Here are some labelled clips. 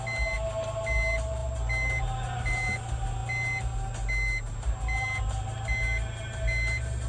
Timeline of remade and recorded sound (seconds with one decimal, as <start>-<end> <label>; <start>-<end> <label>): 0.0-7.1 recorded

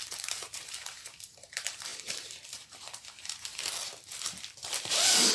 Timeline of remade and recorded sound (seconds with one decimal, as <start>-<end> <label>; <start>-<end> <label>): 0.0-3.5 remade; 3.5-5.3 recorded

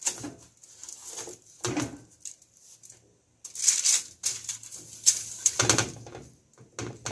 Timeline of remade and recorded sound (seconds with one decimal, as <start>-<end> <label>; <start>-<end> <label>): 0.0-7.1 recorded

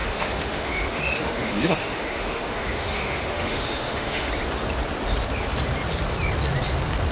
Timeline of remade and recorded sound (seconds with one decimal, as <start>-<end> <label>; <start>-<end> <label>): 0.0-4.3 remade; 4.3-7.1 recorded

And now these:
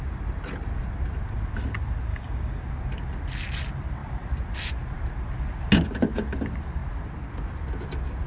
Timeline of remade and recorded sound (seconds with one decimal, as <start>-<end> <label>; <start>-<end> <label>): 0.0-2.1 recorded; 2.1-2.6 remade; 2.6-8.3 recorded